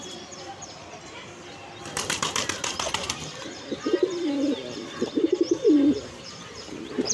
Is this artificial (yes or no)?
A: yes